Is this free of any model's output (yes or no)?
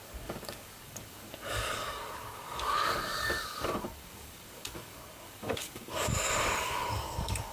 no